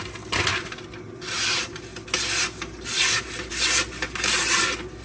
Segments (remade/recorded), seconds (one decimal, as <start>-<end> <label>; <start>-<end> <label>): 0.0-5.0 recorded